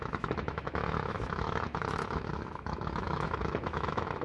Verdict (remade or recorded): remade